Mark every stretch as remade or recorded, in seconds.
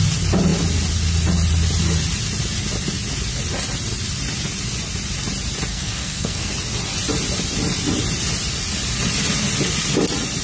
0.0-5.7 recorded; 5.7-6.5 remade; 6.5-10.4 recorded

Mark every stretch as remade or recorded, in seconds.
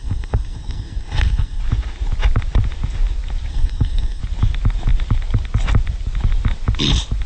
0.0-1.6 remade; 1.6-3.5 recorded; 3.5-4.2 remade; 4.2-7.3 recorded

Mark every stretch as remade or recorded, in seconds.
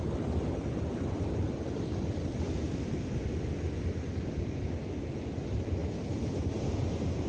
0.0-7.3 recorded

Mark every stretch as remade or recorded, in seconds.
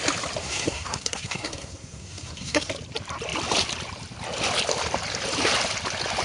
0.0-0.4 recorded; 0.4-2.7 remade; 2.7-6.2 recorded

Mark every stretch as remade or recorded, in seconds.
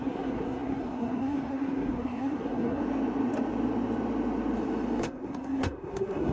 0.0-2.8 remade; 2.8-5.0 recorded; 5.0-6.3 remade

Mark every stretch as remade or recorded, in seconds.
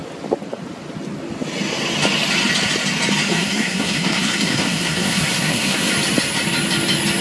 0.0-3.3 recorded; 3.3-5.9 remade; 5.9-7.2 recorded